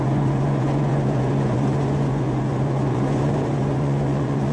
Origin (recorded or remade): remade